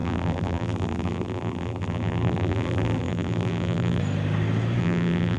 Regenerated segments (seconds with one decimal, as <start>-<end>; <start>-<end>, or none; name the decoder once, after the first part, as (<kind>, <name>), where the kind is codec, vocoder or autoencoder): 0.0-4.0 (vocoder, BigVGAN v2); 4.8-5.4